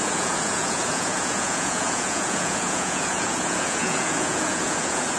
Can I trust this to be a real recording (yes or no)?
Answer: no